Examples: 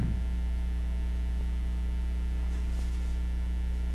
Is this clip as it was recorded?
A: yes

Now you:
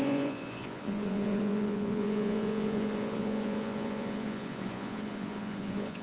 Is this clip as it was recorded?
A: no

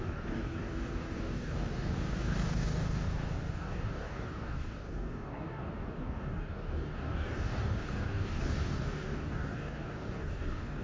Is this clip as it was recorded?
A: no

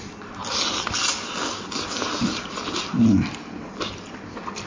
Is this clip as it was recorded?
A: yes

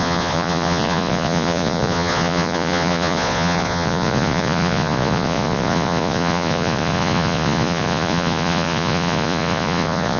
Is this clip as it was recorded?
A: no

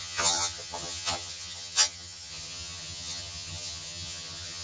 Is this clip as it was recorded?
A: no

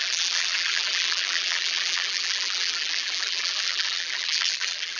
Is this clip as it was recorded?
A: no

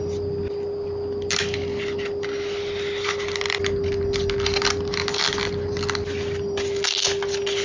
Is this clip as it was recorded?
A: yes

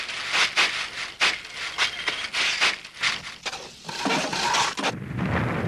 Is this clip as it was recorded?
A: yes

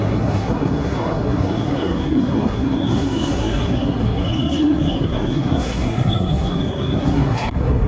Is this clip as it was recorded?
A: no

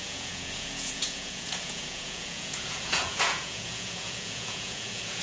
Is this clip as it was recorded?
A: no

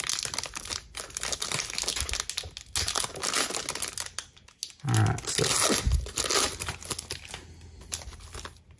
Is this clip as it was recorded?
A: yes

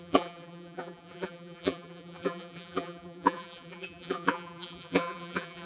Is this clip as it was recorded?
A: no